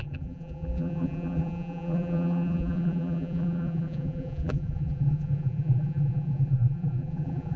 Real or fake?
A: fake